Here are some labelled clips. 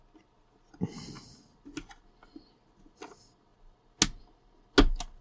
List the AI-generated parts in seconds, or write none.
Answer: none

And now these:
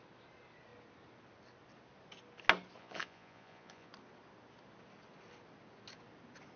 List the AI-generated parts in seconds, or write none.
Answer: 2.8-3.9 (vocoder, Vocos)

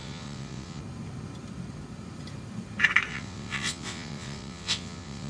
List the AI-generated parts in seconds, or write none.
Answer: 0.0-0.8 (vocoder, WaveNeXt); 3.1-5.3

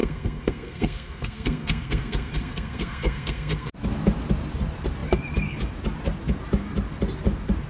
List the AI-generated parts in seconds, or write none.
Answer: 0.0-3.7 (codec, SNAC)

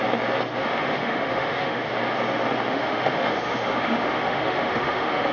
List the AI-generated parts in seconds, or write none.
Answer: 0.6-1.9 (autoencoder, DAC-VAE); 2.7-5.3

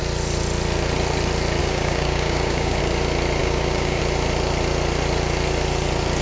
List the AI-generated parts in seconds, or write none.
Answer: 1.6-2.8 (codec, DAC); 3.4-4.0

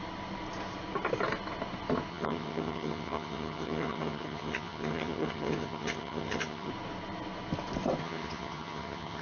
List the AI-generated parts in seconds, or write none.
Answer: 2.1-6.7 (vocoder, HiFi-GAN); 8.0-9.2

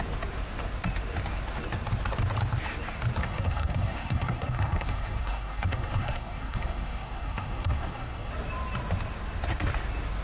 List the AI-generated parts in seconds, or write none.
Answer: 3.2-8.3 (codec, SNAC)